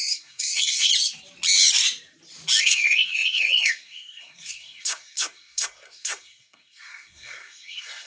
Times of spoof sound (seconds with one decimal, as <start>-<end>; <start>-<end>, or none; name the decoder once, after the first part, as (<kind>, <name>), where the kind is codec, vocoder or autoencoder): 0.0-0.9 (codec, SNAC); 2.6-8.1